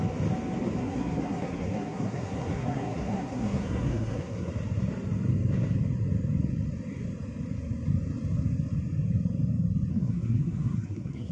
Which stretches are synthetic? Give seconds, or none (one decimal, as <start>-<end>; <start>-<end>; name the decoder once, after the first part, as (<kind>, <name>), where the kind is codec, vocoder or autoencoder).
0.8-4.5 (codec, SNAC); 9.9-11.3